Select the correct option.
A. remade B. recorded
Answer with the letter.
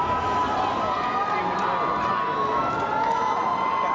B